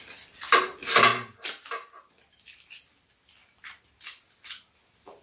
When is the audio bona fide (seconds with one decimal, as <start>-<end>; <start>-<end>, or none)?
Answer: 0.0-5.2